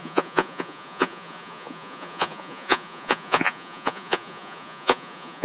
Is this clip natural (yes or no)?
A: no